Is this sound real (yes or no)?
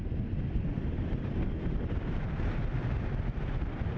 yes